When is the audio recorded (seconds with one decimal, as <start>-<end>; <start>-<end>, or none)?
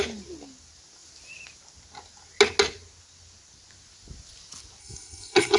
0.0-4.8